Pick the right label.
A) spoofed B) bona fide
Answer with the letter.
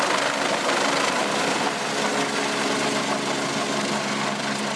B